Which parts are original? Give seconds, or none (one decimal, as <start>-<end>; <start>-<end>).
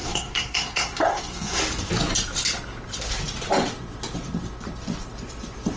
1.6-5.8